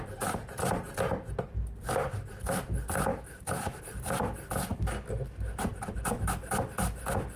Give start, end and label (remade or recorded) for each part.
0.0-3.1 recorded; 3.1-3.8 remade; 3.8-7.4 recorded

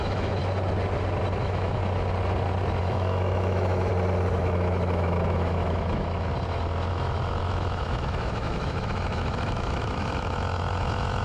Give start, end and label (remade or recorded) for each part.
0.0-0.4 remade; 0.4-1.4 recorded; 1.4-1.8 remade; 1.8-2.8 recorded; 2.8-3.9 remade; 3.9-4.4 recorded; 4.4-6.3 remade; 6.3-6.9 recorded; 6.9-11.2 remade

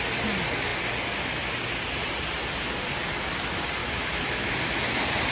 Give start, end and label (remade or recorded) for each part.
0.0-3.8 recorded; 3.8-4.5 remade; 4.5-5.3 recorded

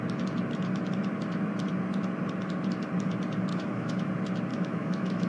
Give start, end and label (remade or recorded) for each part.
0.0-3.5 recorded; 3.5-4.1 remade; 4.1-4.5 recorded; 4.5-5.3 remade

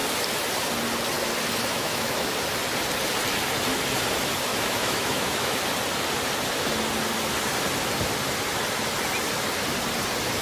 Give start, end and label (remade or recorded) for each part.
0.0-1.7 recorded; 1.7-2.3 remade; 2.3-4.5 recorded; 4.5-5.6 remade; 5.6-10.4 recorded

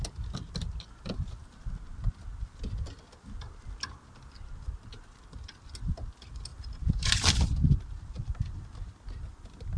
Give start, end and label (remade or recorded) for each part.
0.0-9.8 recorded

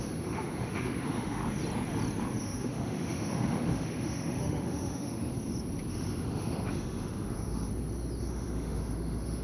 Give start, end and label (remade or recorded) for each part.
0.0-1.4 remade; 1.4-2.4 recorded; 2.4-5.3 remade; 5.3-5.9 recorded; 5.9-7.7 remade; 7.7-8.2 recorded; 8.2-9.4 remade